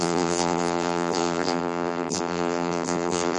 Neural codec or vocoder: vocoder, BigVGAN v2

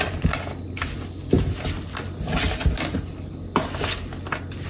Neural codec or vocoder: none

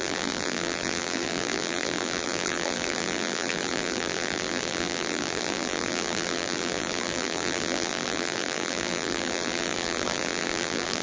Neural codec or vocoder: vocoder, BigVGAN v2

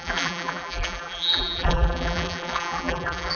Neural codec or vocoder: vocoder, BigVGAN v2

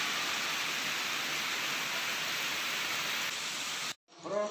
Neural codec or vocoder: none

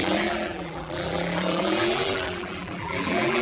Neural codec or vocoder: vocoder, BigVGAN v2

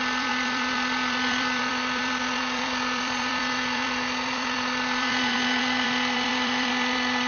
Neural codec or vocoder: vocoder, BigVGAN v2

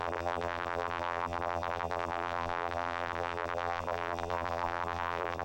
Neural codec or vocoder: vocoder, BigVGAN v2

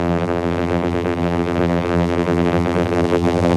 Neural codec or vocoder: vocoder, BigVGAN v2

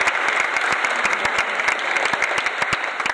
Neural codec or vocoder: none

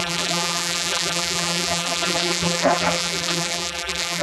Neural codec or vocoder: vocoder, BigVGAN v2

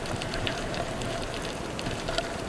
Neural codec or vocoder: vocoder, BigVGAN v2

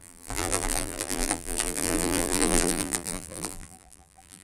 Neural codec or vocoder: vocoder, BigVGAN v2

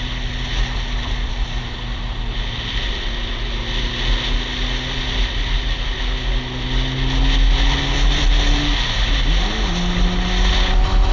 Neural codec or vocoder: none